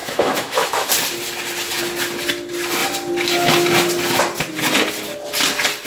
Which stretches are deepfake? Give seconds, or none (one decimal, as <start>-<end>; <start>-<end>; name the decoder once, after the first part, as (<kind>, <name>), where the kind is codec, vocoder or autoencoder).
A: 0.0-0.9 (autoencoder, DAC-VAE)